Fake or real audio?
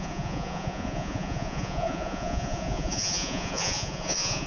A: fake